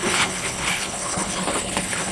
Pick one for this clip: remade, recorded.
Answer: remade